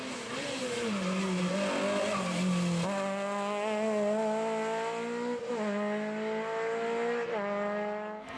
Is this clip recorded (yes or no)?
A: yes